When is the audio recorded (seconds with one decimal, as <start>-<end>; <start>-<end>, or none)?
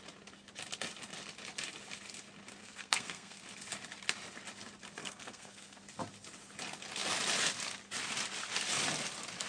0.0-2.6; 3.4-5.0; 5.8-9.5